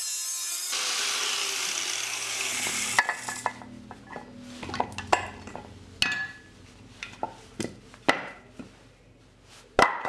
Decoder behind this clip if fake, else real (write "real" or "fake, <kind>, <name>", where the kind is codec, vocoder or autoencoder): real